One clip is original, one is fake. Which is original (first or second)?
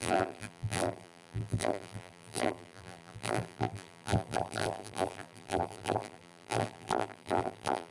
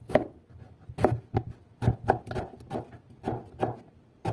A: second